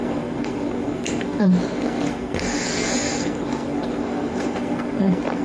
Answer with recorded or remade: remade